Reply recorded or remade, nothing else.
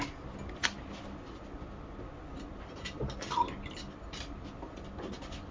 recorded